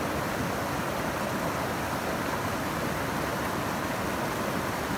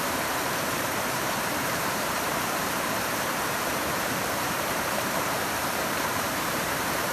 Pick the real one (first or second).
first